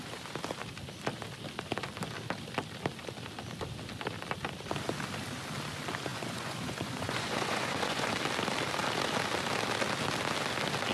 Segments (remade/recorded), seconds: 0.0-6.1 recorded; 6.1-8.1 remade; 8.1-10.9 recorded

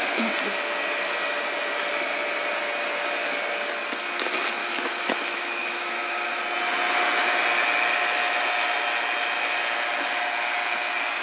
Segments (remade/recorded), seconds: 0.0-4.6 recorded; 4.6-6.4 remade; 6.4-11.2 recorded